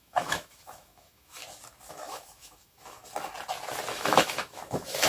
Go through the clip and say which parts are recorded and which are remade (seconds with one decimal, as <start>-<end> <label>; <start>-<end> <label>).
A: 0.0-1.4 remade; 1.4-1.9 recorded; 1.9-3.0 remade; 3.0-3.9 recorded; 3.9-5.1 remade